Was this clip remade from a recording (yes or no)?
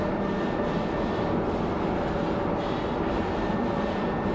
no